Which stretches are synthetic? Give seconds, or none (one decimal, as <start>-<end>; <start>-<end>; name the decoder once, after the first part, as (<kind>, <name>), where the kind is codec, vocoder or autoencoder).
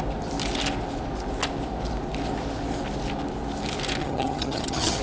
4.0-5.0 (vocoder, HiFi-GAN)